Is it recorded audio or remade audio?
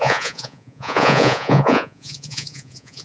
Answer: remade